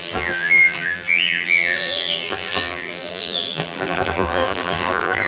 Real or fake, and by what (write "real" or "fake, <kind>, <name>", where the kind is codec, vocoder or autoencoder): fake, vocoder, BigVGAN v2